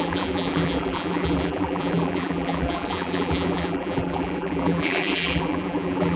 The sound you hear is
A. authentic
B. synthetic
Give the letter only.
B